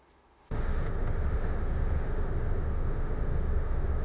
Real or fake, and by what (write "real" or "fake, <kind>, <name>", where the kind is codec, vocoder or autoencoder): fake, autoencoder, DAC-VAE